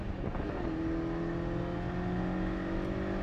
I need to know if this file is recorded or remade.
recorded